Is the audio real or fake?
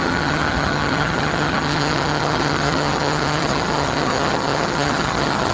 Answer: fake